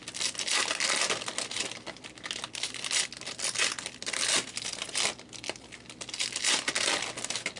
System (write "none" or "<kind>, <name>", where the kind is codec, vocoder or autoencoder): none